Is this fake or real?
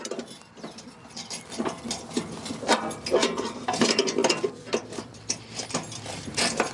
fake